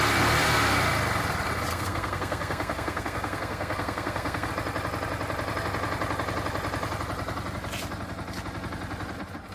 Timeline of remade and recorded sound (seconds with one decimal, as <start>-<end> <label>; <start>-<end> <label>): 0.0-1.7 recorded; 1.7-4.5 remade; 4.5-9.5 recorded